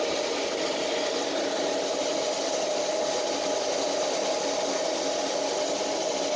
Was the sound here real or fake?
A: real